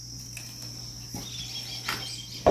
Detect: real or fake real